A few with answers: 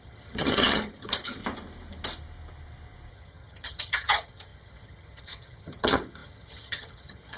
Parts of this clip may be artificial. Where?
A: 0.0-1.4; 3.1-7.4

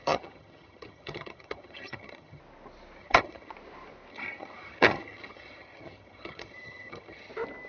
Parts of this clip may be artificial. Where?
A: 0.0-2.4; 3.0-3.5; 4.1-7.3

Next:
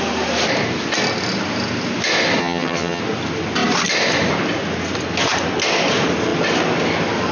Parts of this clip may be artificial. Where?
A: 2.4-3.0

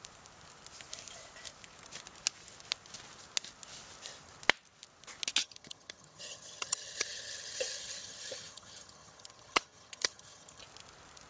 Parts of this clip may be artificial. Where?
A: 5.4-10.6

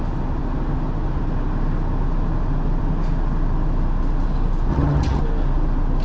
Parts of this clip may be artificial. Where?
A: 4.7-5.2

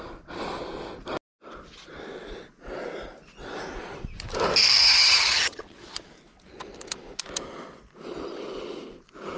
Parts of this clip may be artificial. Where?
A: 4.8-5.6

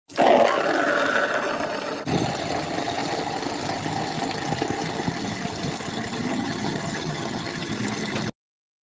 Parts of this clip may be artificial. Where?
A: 6.3-7.7

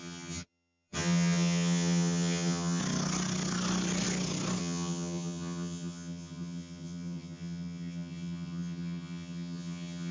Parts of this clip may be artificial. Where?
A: 0.0-2.8; 4.6-10.1